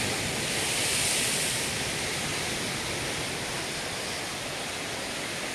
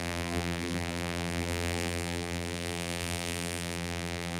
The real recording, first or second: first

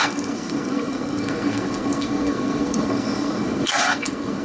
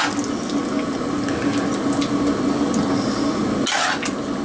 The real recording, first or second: second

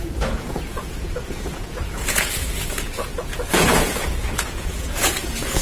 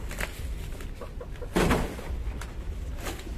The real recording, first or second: second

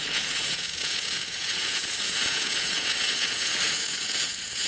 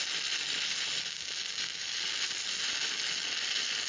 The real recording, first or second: second